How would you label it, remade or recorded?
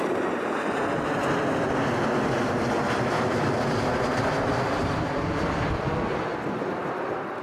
recorded